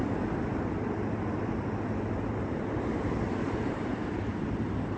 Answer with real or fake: real